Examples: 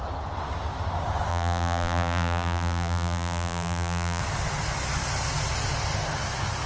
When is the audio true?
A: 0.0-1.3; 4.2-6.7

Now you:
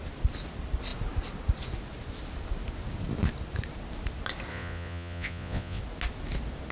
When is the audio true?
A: 0.0-4.5; 5.8-6.7